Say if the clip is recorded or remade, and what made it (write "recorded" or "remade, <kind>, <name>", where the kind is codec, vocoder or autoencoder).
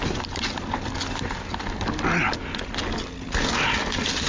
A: recorded